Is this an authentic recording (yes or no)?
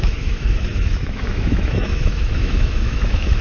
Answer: no